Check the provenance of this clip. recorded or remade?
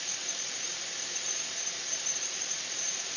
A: remade